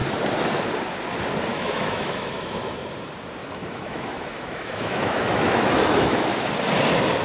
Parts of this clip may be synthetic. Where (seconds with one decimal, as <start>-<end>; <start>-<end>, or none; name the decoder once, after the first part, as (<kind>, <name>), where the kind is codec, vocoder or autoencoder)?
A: 1.5-2.6 (autoencoder, DAC-VAE); 3.4-6.5